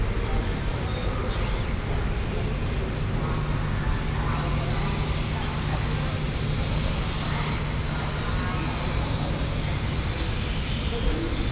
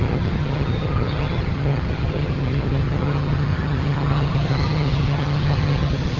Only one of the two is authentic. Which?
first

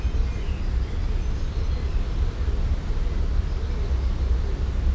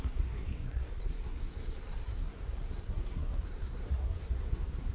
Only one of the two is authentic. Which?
first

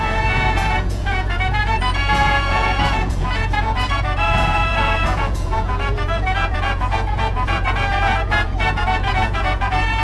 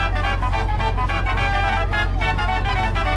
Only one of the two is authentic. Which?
second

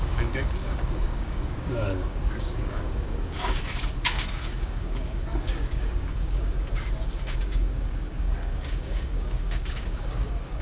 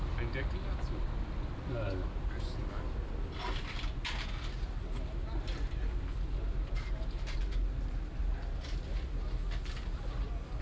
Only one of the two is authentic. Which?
second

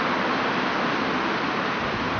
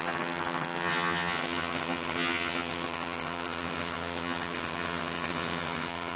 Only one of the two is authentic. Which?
first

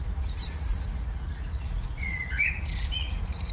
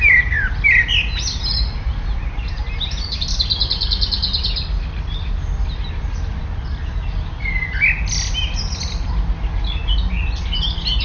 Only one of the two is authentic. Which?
second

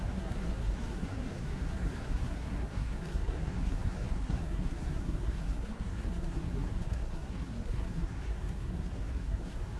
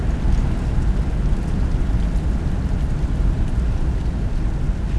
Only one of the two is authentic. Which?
second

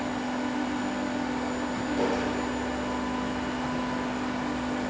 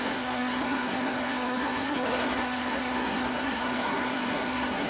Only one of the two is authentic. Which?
first